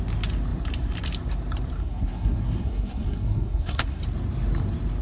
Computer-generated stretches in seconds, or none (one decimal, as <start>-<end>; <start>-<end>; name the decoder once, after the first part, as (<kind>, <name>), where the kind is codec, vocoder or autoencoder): 1.8-4.0 (codec, SNAC)